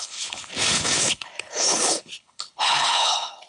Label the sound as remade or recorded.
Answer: remade